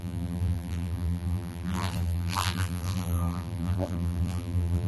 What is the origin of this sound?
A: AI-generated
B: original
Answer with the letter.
A